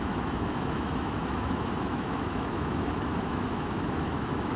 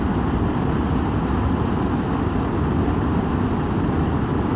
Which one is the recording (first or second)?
second